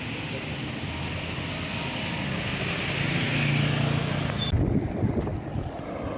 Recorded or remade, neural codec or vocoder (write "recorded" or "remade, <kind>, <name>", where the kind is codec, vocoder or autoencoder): recorded